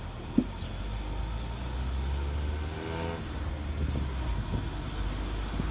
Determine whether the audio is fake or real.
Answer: real